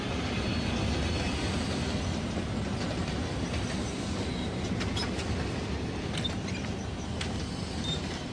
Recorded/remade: recorded